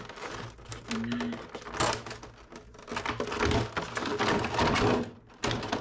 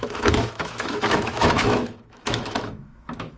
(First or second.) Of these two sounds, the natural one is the first